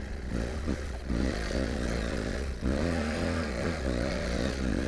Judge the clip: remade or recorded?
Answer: remade